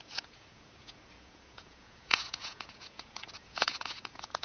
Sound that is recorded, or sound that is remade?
remade